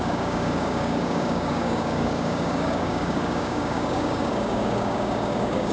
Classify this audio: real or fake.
fake